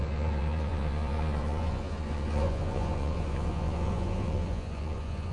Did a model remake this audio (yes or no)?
yes